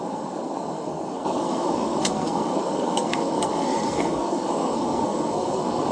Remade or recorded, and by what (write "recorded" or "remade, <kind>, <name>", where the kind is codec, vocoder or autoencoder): remade, codec, SNAC